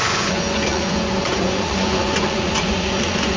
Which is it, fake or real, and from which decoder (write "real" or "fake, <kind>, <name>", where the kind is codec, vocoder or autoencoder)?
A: fake, vocoder, Vocos